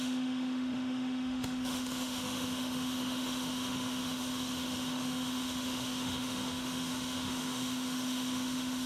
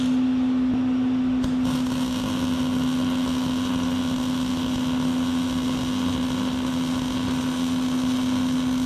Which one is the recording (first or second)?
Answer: second